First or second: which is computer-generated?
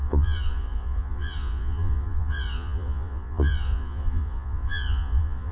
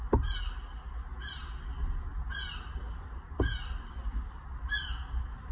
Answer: first